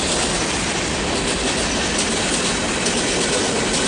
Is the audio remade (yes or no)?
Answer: no